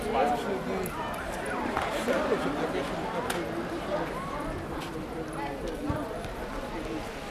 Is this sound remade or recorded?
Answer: recorded